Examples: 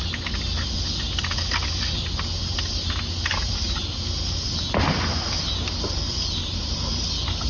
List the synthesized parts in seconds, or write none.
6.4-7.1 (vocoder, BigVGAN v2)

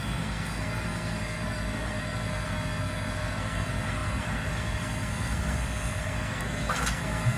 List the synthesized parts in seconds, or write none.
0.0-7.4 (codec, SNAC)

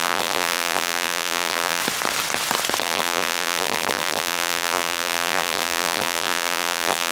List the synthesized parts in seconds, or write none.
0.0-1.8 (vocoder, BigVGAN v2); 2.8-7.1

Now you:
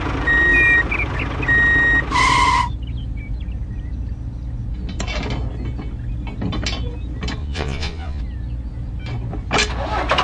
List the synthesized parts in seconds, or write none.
7.4-8.2 (vocoder, Vocos)

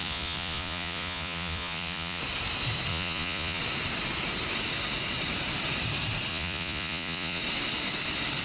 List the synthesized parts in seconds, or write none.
0.0-2.2 (vocoder, Vocos); 2.9-3.6; 6.3-7.4

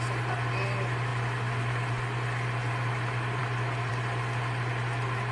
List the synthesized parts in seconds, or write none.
none